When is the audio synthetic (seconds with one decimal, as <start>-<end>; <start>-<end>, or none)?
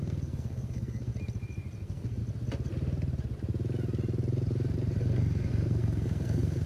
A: 0.0-1.1; 1.8-2.2; 5.0-6.7